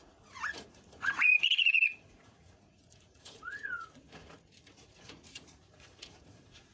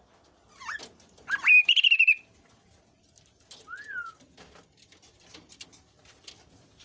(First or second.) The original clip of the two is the second